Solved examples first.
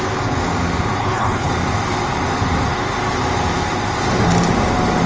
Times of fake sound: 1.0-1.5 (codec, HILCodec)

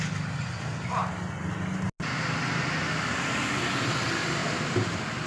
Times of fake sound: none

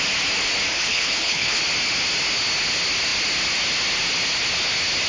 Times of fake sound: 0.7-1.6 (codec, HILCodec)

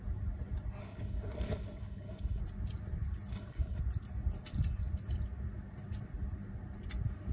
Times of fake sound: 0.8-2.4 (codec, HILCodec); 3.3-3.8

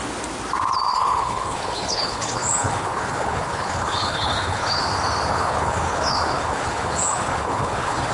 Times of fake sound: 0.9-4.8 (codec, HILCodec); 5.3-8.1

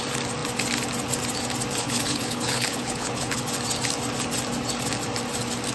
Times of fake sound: 1.8-3.4 (codec, HILCodec)

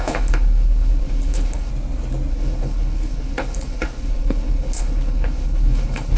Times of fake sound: 0.0-1.7 (codec, HILCodec); 2.3-6.2